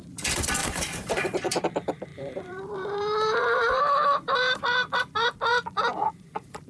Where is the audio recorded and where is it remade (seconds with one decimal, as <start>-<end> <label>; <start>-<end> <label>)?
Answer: 0.0-0.6 recorded; 0.6-1.6 remade; 1.6-2.1 recorded; 2.1-5.0 remade; 5.0-6.7 recorded